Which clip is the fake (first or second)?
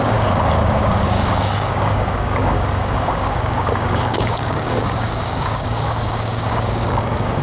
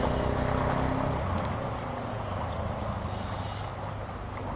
first